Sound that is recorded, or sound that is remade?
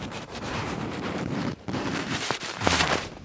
remade